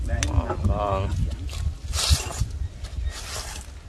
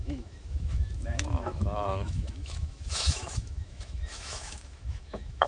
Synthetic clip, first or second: second